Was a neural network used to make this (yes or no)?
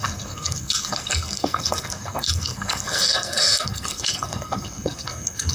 yes